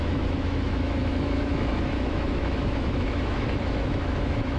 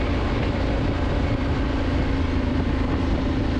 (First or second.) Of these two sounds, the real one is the second